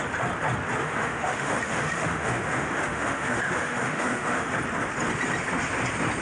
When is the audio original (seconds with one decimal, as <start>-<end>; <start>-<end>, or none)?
0.0-0.8; 4.5-6.2